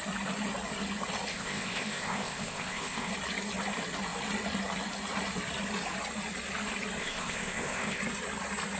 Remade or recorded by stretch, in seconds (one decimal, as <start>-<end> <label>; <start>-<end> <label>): 0.0-1.3 recorded; 1.3-3.1 remade; 3.1-7.0 recorded; 7.0-8.0 remade; 8.0-8.8 recorded